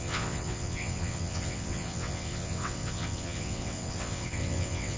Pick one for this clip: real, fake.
fake